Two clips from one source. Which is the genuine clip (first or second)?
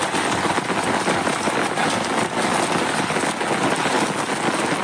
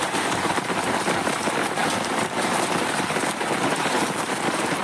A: first